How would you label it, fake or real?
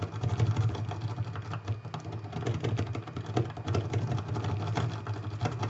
real